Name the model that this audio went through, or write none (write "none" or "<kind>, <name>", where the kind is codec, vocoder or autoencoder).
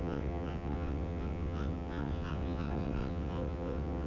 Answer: vocoder, WaveNeXt